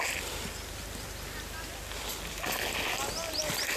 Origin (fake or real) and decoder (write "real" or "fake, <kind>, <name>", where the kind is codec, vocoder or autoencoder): real